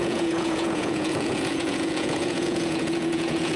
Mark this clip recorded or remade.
remade